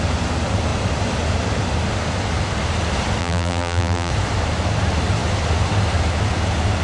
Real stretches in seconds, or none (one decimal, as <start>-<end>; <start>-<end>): 0.0-3.2; 4.1-6.8